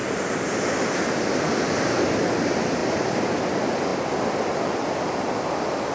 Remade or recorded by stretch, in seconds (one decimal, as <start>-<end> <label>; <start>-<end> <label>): 0.0-5.9 recorded